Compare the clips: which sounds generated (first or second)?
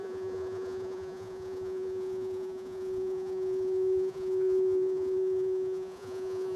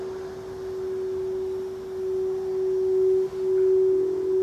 first